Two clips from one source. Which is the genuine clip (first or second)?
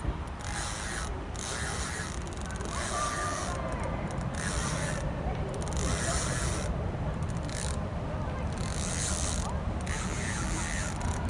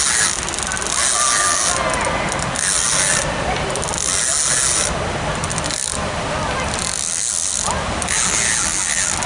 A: second